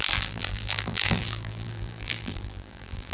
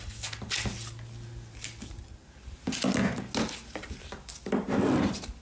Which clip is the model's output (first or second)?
first